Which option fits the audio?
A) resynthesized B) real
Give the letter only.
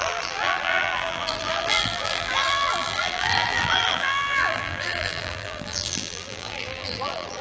A